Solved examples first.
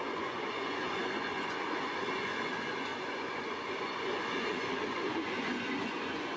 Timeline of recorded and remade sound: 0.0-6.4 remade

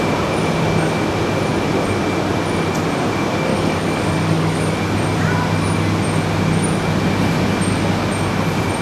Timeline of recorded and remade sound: 0.0-3.5 recorded; 3.5-4.7 remade; 4.7-8.8 recorded

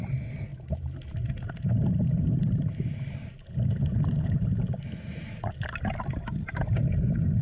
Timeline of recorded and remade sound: 0.0-7.4 recorded

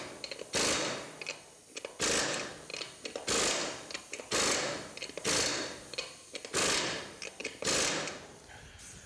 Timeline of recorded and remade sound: 0.0-9.1 recorded